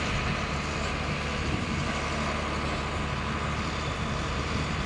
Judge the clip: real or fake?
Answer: real